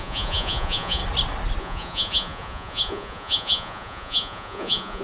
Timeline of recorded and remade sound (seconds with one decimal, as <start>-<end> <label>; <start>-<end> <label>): 0.0-1.0 remade; 1.0-1.6 recorded; 1.6-5.0 remade